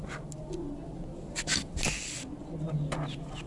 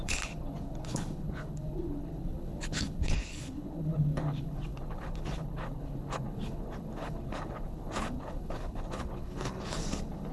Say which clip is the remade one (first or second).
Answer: second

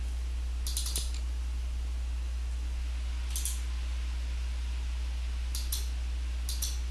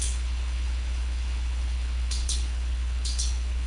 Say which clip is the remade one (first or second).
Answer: second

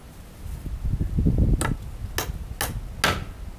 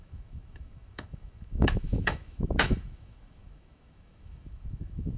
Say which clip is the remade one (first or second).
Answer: second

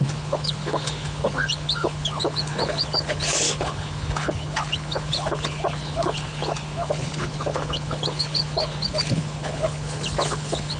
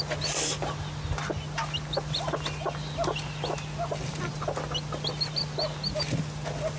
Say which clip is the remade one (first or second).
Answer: first